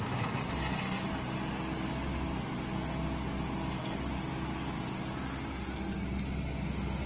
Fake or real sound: real